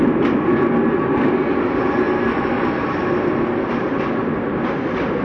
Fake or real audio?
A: real